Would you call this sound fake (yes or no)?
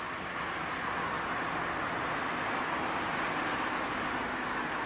no